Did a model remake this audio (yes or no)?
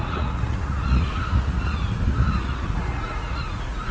yes